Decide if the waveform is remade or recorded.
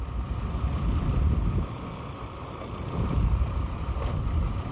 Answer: remade